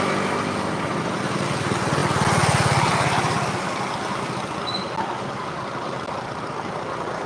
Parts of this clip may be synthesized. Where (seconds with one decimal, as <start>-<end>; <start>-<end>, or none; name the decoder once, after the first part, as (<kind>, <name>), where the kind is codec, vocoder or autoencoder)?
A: none